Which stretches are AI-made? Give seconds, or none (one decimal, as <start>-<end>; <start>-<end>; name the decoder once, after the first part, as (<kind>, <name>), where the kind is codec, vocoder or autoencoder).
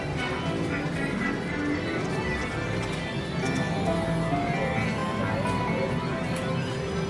none